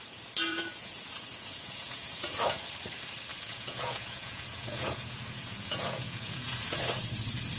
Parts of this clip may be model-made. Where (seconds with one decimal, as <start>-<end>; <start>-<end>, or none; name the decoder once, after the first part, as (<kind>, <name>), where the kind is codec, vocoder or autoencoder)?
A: 0.5-2.6 (vocoder, Vocos); 3.3-6.9

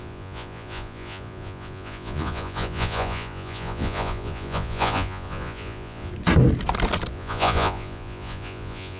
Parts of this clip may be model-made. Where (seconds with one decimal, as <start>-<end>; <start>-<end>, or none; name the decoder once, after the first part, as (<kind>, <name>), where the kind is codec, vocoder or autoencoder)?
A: 0.0-6.1 (vocoder, Vocos); 7.1-9.0

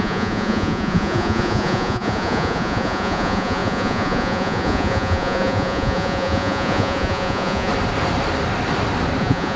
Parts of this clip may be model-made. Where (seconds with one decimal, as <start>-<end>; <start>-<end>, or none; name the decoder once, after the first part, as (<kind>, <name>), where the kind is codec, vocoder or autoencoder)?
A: 0.0-7.7 (vocoder, Vocos); 9.2-9.6

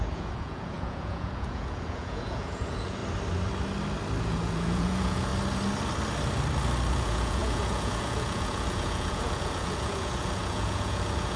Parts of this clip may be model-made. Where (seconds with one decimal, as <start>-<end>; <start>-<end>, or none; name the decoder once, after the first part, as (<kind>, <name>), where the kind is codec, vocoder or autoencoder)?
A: 0.0-3.0 (vocoder, Vocos); 4.2-5.3; 6.9-11.4

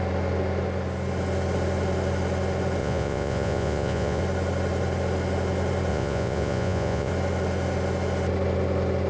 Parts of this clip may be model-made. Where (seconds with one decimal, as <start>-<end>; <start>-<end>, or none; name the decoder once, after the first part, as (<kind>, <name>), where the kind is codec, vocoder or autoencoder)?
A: 2.8-4.2 (vocoder, Vocos); 5.9-7.1